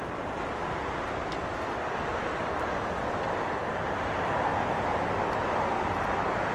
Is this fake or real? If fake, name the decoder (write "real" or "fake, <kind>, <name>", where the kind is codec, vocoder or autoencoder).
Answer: real